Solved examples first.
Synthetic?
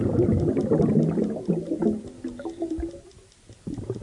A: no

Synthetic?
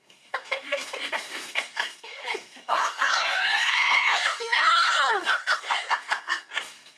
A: yes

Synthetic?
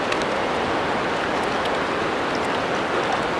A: no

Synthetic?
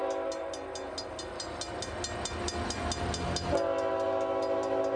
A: no